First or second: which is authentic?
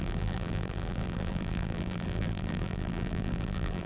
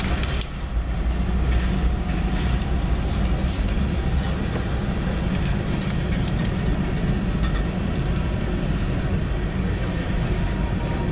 second